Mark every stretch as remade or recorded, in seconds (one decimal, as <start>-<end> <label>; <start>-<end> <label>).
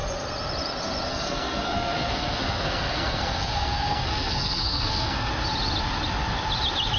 0.0-1.1 recorded; 1.1-5.3 remade; 5.3-7.0 recorded